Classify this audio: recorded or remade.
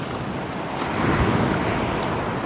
recorded